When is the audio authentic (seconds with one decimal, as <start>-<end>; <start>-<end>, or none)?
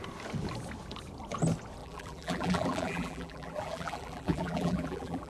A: 0.0-1.8